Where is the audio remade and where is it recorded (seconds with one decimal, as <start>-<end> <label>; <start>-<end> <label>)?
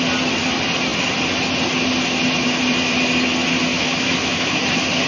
0.0-3.7 recorded; 3.7-4.6 remade; 4.6-5.1 recorded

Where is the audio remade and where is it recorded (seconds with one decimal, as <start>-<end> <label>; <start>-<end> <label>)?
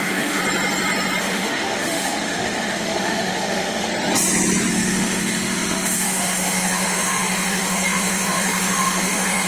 0.0-0.4 remade; 0.4-1.2 recorded; 1.2-3.9 remade; 3.9-4.7 recorded; 4.7-9.5 remade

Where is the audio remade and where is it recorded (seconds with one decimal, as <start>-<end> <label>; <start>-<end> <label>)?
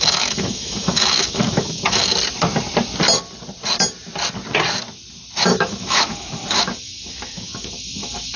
0.0-2.1 remade; 2.1-5.4 recorded; 5.4-8.4 remade